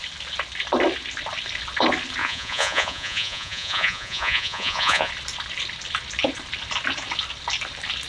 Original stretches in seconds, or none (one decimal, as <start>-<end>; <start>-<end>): 0.0-2.2; 5.1-8.1